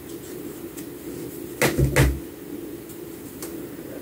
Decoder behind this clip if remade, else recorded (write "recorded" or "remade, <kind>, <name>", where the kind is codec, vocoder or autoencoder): recorded